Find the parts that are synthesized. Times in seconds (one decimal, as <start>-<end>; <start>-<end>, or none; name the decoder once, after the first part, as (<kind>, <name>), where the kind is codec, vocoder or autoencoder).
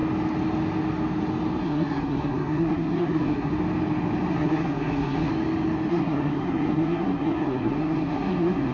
1.6-3.5 (codec, SNAC); 4.3-5.3; 5.9-8.7